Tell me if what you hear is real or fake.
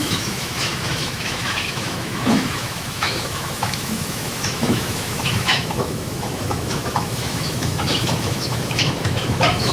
fake